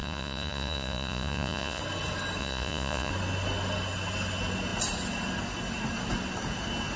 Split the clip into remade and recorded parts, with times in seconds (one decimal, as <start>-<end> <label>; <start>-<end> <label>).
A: 0.0-1.8 remade; 1.8-2.4 recorded; 2.4-3.1 remade; 3.1-7.0 recorded